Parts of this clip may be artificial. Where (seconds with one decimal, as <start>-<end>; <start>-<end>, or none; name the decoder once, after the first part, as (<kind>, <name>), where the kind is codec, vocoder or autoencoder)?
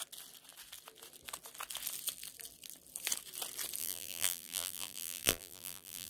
3.8-6.1 (vocoder, BigVGAN v2)